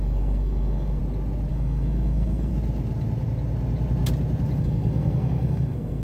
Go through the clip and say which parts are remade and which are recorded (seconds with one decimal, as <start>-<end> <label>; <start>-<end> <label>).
0.0-1.0 remade; 1.0-1.5 recorded; 1.5-2.5 remade; 2.5-4.6 recorded; 4.6-6.0 remade